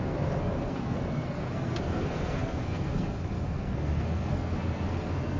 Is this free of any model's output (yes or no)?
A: no